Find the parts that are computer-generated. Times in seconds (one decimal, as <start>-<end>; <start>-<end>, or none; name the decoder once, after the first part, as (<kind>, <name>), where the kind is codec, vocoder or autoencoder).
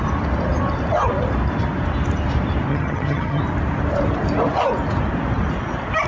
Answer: 2.7-3.4 (vocoder, HiFi-GAN)